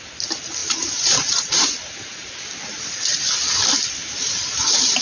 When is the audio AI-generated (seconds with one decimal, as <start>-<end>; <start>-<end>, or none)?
0.6-2.3; 4.0-5.0

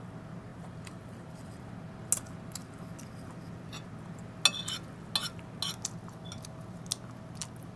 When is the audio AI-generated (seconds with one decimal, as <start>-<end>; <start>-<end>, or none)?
0.5-1.6

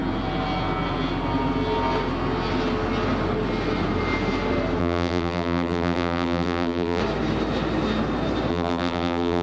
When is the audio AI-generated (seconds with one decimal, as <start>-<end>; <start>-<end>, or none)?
4.8-7.0; 8.5-9.4

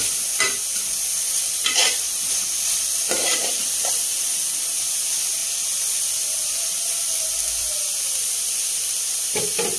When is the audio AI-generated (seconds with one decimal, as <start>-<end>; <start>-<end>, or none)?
1.8-4.7